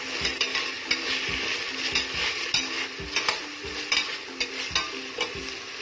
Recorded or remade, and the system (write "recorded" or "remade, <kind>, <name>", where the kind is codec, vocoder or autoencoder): recorded